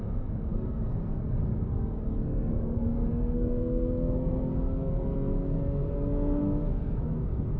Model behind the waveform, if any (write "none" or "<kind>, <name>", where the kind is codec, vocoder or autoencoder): codec, SNAC